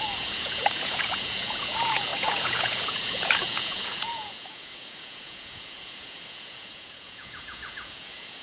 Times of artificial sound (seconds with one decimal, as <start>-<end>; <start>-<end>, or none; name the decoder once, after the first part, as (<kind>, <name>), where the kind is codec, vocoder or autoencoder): 0.0-8.4 (vocoder, Vocos)